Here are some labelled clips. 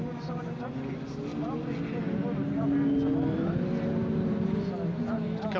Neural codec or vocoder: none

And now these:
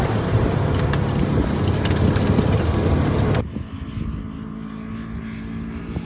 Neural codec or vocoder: none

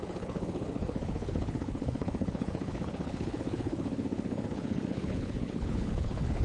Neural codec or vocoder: codec, HILCodec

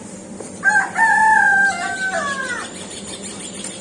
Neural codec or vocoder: none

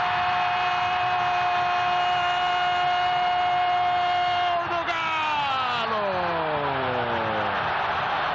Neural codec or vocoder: none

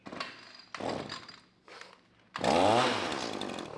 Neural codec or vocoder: none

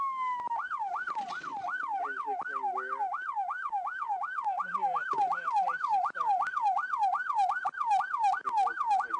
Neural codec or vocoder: none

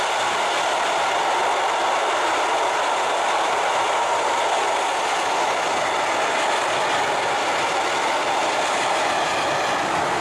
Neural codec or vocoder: none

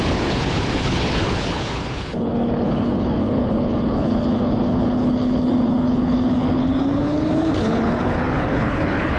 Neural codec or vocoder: codec, HILCodec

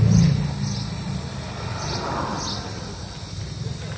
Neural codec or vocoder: none